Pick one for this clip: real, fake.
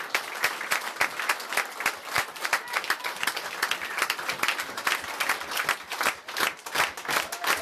real